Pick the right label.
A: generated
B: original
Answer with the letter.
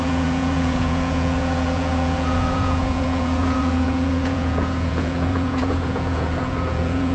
A